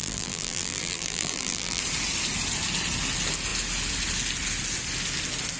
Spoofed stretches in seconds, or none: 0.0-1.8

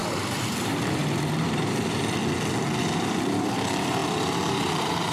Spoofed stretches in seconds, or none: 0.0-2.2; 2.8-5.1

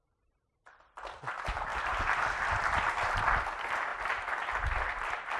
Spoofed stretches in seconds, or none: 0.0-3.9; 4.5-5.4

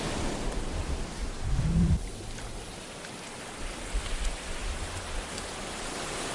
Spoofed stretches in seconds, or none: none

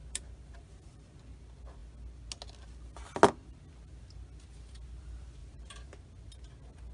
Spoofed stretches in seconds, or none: 0.0-1.4; 5.4-6.0